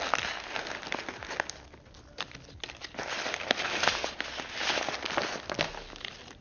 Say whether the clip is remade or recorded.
recorded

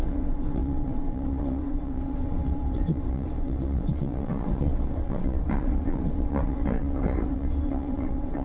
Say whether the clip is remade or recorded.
remade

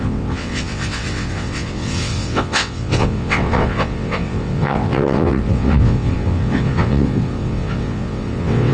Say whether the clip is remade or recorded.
remade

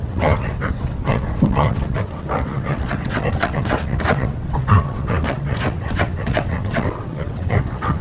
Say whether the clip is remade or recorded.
remade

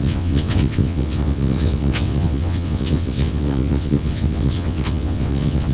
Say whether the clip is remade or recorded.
remade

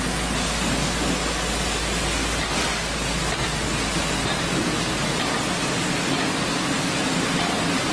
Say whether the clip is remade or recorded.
recorded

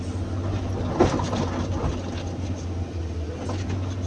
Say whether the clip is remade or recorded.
recorded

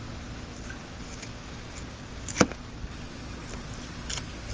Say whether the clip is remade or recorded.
recorded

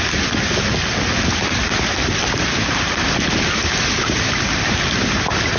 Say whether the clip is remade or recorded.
recorded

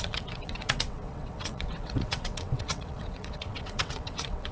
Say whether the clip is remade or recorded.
remade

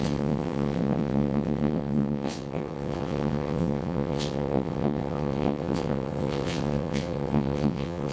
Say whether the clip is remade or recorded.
remade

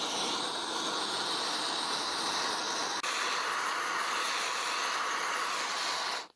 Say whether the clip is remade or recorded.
recorded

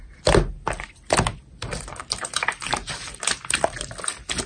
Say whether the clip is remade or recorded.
recorded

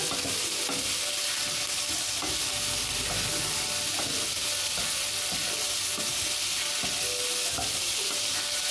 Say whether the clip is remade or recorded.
recorded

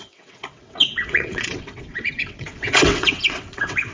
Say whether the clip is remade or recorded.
remade